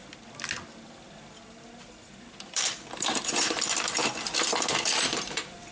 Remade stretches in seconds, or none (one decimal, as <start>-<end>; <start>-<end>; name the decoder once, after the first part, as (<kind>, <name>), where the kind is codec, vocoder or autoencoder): 2.2-5.7 (vocoder, BigVGAN v2)